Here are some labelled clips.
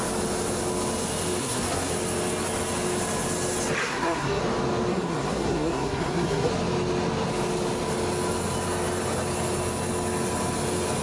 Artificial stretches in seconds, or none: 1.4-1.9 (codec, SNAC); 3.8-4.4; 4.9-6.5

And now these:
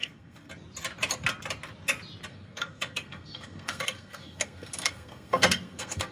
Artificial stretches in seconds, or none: 0.0-0.5 (codec, SNAC); 2.3-6.1

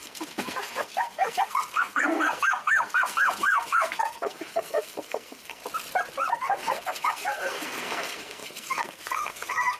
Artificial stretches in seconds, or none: 0.0-5.6 (codec, SNAC); 6.3-9.8

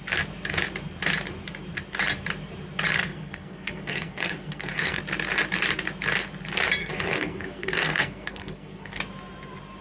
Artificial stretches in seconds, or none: 3.0-5.0 (codec, SNAC); 6.8-9.0

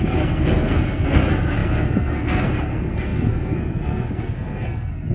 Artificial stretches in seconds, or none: 0.0-5.1 (codec, SNAC)

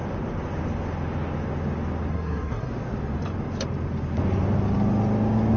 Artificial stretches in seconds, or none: 2.1-2.7 (codec, SNAC)

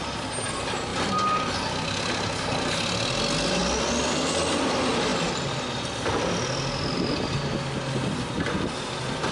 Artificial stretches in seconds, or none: none

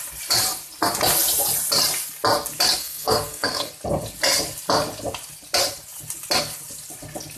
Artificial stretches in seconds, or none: 2.8-3.7 (codec, SNAC)